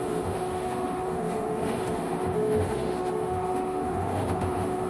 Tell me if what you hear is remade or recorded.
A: remade